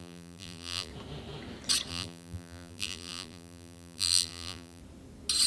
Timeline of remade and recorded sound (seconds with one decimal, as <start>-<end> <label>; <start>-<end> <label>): 0.0-0.9 remade; 0.9-1.9 recorded; 1.9-4.8 remade; 4.8-5.5 recorded